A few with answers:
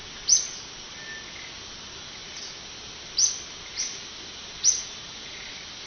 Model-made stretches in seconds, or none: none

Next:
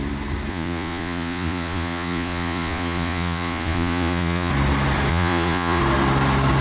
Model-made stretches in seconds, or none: 0.5-4.5 (vocoder, Vocos); 5.1-5.8

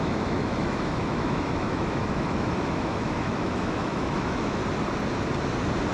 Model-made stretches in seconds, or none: 0.0-4.6 (autoencoder, DAC-VAE)

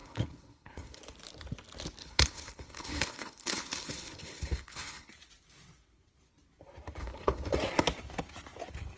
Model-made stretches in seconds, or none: 0.0-1.0 (codec, HILCodec); 2.0-5.1; 7.0-7.5

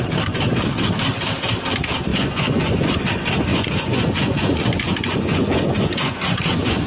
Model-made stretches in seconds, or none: 2.1-3.1 (vocoder, Vocos); 3.5-6.9

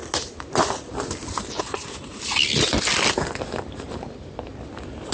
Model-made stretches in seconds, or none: none